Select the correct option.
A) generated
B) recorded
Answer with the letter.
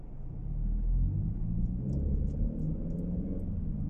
B